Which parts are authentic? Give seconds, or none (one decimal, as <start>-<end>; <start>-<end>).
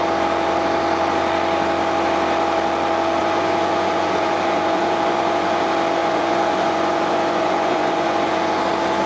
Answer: 0.0-3.2; 5.6-6.0; 8.6-9.1